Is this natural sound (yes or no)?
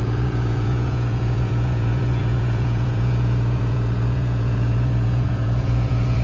no